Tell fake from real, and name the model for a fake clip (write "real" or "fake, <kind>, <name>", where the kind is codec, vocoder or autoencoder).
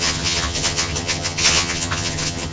fake, vocoder, HiFi-GAN